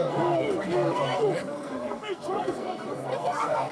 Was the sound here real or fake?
fake